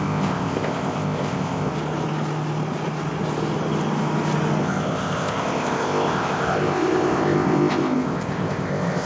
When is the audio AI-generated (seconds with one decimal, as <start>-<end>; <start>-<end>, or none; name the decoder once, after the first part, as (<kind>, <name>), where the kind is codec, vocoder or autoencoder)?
0.0-1.7 (codec, ZipCodec); 4.6-9.1